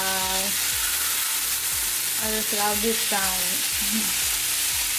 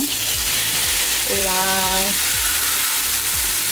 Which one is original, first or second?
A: first